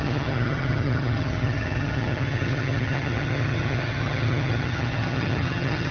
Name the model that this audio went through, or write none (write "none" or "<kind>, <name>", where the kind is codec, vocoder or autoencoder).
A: vocoder, HiFi-GAN